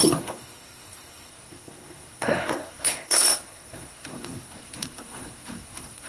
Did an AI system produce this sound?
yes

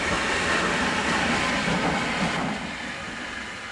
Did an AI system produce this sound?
no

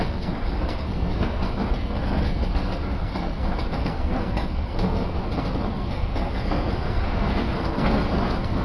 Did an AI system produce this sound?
yes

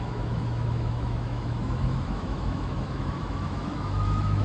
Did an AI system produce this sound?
yes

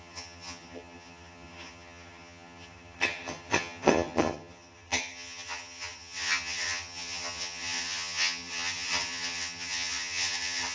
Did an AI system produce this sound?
yes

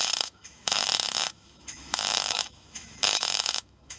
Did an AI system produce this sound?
yes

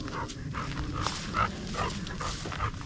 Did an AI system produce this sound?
no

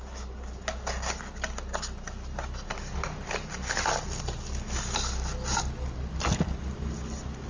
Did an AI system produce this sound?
no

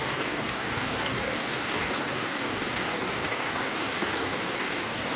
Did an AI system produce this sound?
yes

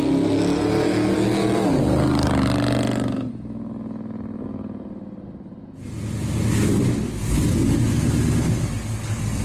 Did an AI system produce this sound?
no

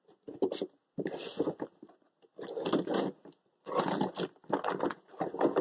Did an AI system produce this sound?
no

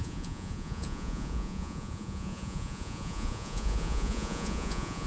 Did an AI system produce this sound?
yes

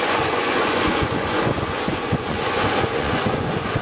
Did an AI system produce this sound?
yes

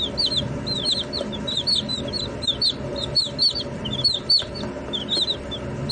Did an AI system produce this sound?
no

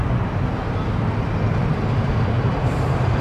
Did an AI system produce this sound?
no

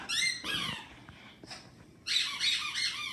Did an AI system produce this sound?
no